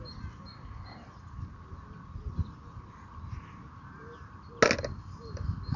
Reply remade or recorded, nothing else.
recorded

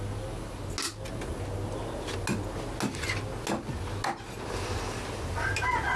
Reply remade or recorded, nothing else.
recorded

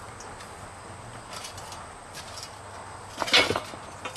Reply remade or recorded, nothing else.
recorded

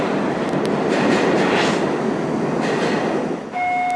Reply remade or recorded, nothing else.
recorded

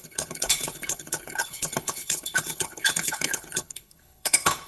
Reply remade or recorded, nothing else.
remade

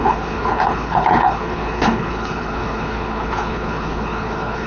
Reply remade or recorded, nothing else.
remade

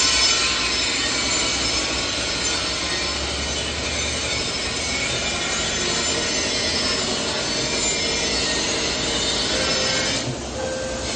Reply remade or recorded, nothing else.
recorded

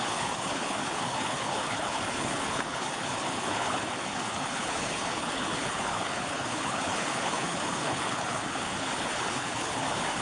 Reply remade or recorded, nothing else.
remade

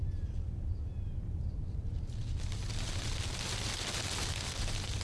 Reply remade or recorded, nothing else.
recorded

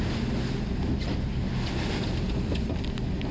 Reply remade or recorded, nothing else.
recorded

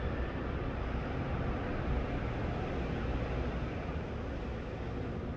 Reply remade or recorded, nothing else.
recorded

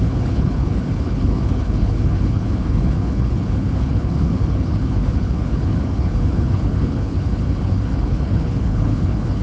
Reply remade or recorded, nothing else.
remade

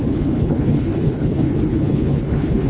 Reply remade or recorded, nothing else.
remade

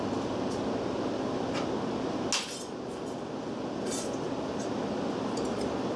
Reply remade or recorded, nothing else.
recorded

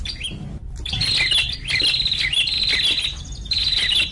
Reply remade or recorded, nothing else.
recorded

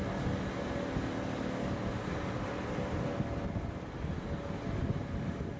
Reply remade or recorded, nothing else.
recorded